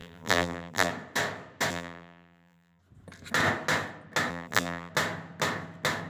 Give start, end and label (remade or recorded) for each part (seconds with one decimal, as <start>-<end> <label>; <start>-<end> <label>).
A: 0.0-0.9 remade; 0.9-1.7 recorded; 1.7-2.8 remade; 2.8-4.3 recorded; 4.3-4.9 remade; 4.9-6.1 recorded